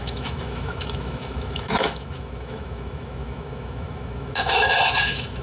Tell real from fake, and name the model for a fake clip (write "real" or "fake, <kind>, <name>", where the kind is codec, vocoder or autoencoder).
fake, autoencoder, DAC-VAE